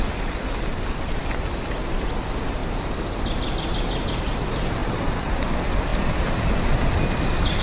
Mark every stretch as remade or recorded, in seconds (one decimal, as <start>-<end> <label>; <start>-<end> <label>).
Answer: 0.0-0.7 recorded; 0.7-1.2 remade; 1.2-4.8 recorded; 4.8-5.3 remade; 5.3-7.6 recorded